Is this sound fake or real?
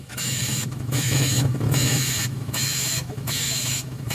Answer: fake